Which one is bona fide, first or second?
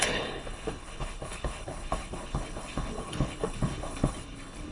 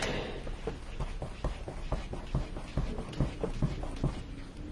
second